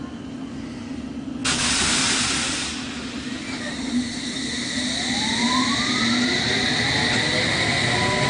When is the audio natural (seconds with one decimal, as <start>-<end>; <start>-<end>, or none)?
0.0-8.3